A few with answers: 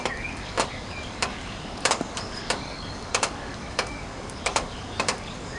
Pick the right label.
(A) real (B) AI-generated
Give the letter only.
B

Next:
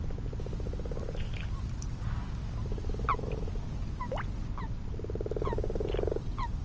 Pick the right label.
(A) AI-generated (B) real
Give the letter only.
B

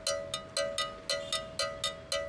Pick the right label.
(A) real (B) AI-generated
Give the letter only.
A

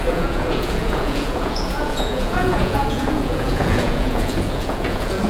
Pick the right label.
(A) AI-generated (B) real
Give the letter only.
A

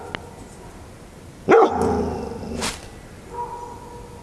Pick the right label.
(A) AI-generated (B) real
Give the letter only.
B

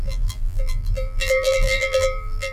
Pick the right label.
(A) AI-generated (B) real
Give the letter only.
A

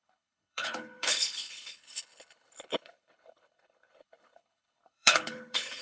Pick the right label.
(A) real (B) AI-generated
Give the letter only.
B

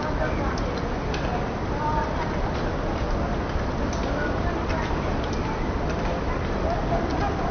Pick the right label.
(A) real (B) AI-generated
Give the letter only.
A